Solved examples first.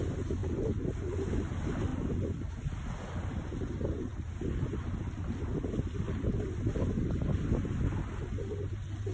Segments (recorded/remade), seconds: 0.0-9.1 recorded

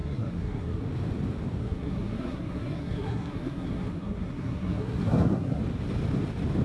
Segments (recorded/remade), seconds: 0.0-0.8 remade; 0.8-1.6 recorded; 1.6-5.6 remade; 5.6-6.6 recorded